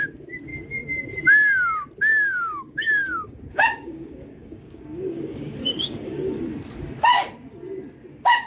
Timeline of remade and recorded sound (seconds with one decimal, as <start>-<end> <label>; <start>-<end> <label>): 0.0-2.1 recorded; 2.1-6.4 remade; 6.4-8.5 recorded